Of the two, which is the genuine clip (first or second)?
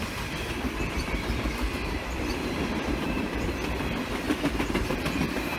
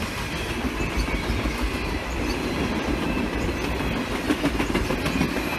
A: second